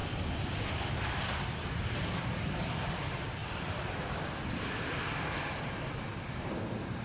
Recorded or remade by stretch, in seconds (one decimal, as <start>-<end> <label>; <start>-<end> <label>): 0.0-3.0 remade; 3.0-3.4 recorded; 3.4-6.0 remade; 6.0-7.0 recorded